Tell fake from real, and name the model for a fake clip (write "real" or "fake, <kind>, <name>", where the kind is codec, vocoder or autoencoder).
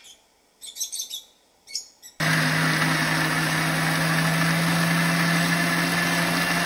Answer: real